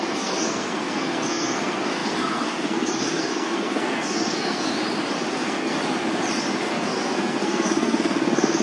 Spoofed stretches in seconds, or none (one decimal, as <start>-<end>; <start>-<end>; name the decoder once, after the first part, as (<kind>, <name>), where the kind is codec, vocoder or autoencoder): 0.0-4.7 (codec, SNAC); 5.3-5.8; 6.7-8.6